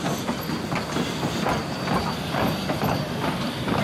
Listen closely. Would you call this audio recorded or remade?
recorded